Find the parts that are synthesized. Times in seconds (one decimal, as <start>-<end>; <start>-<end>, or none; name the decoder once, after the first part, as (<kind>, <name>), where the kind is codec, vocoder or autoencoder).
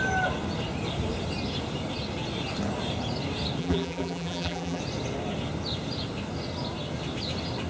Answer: 3.6-4.8 (vocoder, BigVGAN v2)